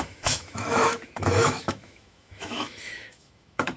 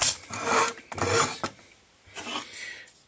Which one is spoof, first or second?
first